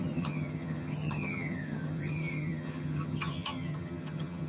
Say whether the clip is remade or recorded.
remade